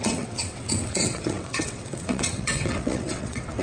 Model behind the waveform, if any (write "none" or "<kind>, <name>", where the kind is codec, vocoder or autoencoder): vocoder, WaveNeXt